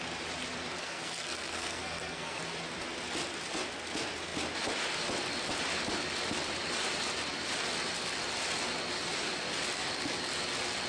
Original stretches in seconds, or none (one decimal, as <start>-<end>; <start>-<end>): 0.0-0.8; 2.4-10.9